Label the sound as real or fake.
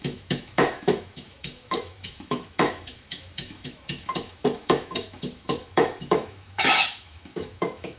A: fake